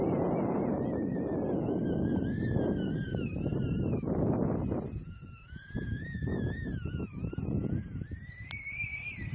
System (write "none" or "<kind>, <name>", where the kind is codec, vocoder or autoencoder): none